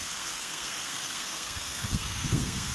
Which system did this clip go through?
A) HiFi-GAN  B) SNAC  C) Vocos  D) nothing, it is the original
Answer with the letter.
B